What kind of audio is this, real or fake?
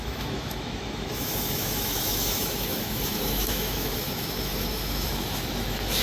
fake